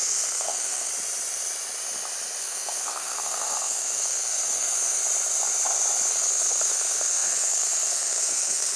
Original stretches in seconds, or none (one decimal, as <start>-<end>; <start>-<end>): 0.9-2.4; 5.0-6.1

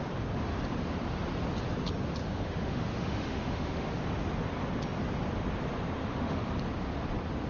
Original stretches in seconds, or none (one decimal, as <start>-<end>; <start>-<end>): 0.0-2.2; 4.0-6.0; 6.5-7.5

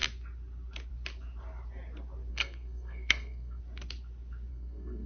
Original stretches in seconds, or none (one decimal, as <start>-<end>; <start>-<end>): 0.0-2.3; 3.6-4.5

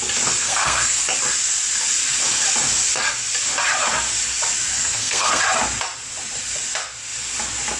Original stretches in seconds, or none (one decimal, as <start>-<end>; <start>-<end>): 0.0-0.4; 1.0-4.7; 5.4-7.8

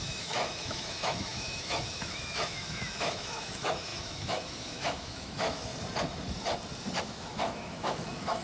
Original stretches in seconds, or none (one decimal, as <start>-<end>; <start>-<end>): 5.7-7.0

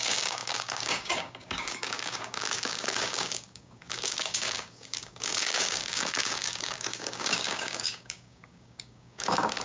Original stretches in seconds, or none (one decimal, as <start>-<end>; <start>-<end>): none

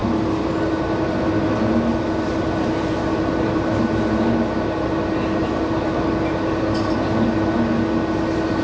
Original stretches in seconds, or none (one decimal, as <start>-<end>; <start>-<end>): 0.0-8.6

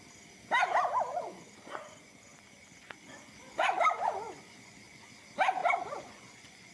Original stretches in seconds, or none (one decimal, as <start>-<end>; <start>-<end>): 0.0-1.1; 5.1-5.6